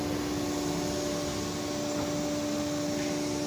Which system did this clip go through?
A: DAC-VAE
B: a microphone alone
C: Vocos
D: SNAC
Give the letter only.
B